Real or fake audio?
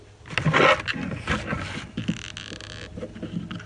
real